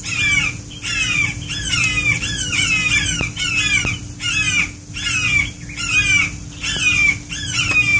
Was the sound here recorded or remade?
recorded